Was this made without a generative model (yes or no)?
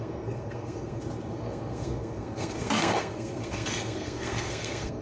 no